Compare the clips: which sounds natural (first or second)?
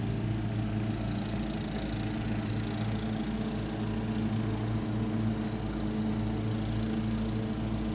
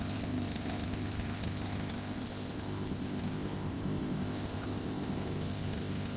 first